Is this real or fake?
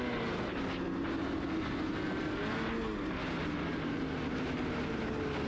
real